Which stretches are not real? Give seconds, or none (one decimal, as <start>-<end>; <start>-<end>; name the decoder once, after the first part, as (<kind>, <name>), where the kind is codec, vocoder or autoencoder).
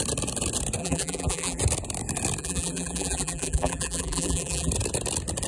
0.8-1.6 (vocoder, BigVGAN v2); 2.4-4.7